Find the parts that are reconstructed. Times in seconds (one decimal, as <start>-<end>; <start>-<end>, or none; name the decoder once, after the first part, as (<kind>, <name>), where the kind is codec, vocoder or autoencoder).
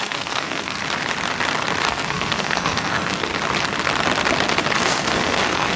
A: 0.0-0.8 (codec, SNAC); 1.9-3.3; 4.8-5.8